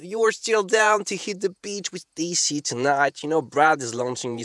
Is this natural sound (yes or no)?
no